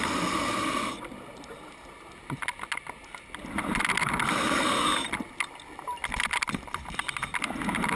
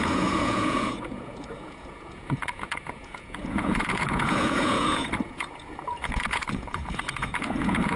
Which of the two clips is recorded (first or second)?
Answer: first